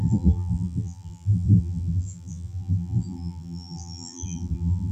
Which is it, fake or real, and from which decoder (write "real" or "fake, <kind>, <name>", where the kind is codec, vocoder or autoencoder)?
fake, vocoder, BigVGAN v2